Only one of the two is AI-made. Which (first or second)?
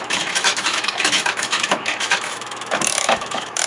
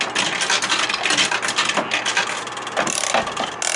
first